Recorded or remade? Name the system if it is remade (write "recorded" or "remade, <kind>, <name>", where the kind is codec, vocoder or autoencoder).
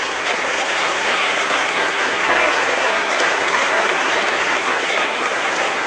remade, codec, SNAC